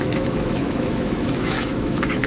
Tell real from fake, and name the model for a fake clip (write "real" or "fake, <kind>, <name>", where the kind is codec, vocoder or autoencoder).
fake, autoencoder, DAC-VAE